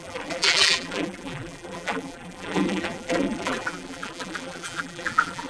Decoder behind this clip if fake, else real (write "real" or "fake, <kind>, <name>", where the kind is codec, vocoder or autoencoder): fake, vocoder, BigVGAN v2